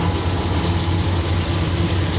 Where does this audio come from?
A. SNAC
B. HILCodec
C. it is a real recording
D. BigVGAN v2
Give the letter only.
C